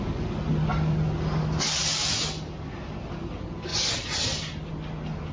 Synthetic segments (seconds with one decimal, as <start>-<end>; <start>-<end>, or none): none